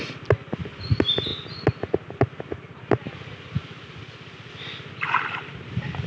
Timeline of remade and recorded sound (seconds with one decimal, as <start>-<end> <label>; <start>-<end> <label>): 0.0-6.1 recorded